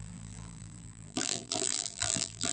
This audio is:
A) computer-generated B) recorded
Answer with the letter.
A